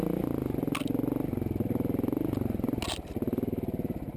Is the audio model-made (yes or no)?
no